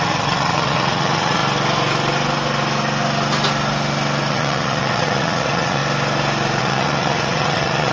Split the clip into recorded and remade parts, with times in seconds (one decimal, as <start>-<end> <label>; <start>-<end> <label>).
0.0-1.4 remade; 1.4-4.3 recorded; 4.3-5.8 remade; 5.8-6.6 recorded; 6.6-7.9 remade